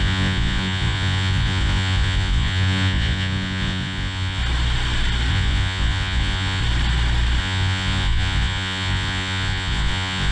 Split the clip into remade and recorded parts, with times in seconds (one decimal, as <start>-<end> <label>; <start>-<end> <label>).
0.0-4.4 remade; 4.4-5.3 recorded; 5.3-6.6 remade; 6.6-7.4 recorded; 7.4-10.3 remade